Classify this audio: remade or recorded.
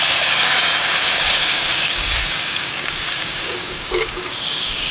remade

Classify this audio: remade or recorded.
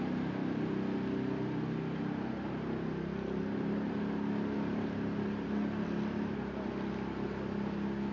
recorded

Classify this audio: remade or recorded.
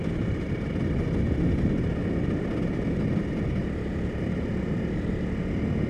recorded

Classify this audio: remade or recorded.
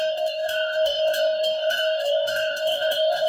remade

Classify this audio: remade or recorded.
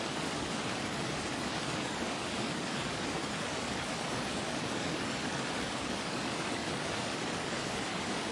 remade